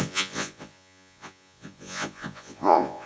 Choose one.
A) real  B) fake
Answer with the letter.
B